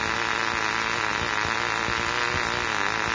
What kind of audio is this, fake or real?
real